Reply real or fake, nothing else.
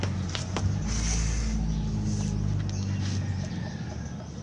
real